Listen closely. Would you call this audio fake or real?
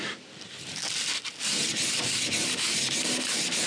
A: real